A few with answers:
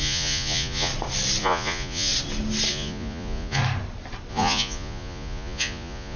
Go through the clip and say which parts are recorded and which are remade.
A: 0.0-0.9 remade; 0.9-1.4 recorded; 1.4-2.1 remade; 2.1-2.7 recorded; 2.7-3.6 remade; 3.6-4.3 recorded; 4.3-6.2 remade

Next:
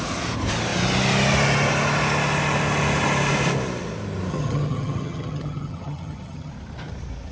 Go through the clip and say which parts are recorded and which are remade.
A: 0.0-4.3 recorded; 4.3-6.5 remade; 6.5-7.3 recorded